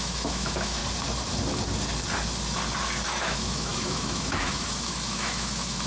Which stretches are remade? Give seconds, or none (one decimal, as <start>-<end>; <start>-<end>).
0.0-0.8; 3.2-5.9